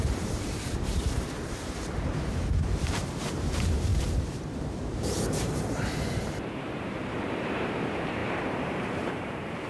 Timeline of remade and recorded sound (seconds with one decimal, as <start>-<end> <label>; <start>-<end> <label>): 0.0-9.7 remade